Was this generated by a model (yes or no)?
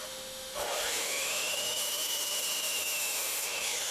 yes